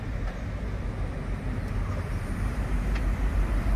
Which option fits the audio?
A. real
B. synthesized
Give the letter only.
B